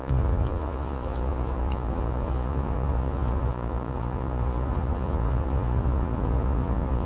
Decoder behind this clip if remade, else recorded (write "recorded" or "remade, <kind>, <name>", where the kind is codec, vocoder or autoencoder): remade, vocoder, Vocos